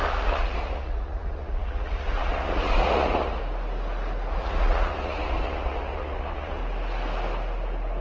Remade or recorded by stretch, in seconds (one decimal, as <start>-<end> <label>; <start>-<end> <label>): 0.0-3.4 remade; 3.4-4.3 recorded; 4.3-6.6 remade; 6.6-8.0 recorded